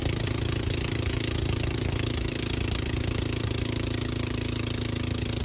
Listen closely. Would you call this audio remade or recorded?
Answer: recorded